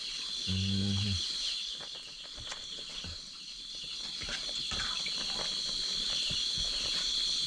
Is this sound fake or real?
real